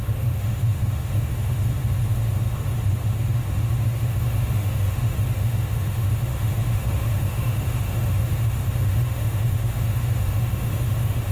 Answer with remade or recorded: remade